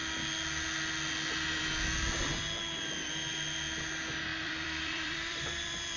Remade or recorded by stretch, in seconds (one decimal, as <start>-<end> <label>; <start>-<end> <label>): 0.0-4.3 recorded; 4.3-6.0 remade